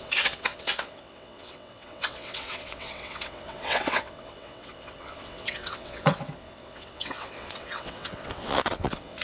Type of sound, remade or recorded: remade